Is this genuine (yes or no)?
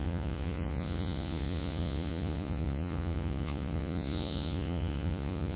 no